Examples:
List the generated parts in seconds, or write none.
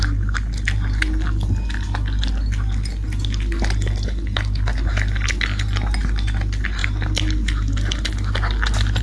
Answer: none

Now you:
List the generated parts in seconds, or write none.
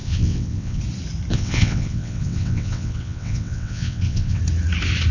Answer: 0.0-0.8; 1.3-4.4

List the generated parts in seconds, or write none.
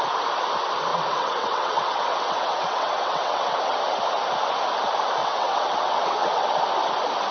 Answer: 0.9-3.8; 5.2-6.6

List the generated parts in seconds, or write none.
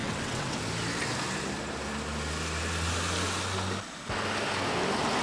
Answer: 0.0-0.6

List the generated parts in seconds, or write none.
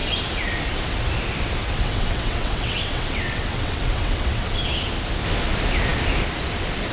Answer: 1.6-4.5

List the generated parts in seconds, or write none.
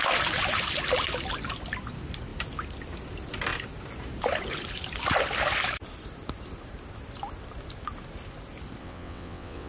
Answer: 8.8-9.7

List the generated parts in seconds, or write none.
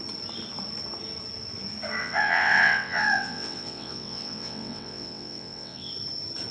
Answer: 2.0-5.9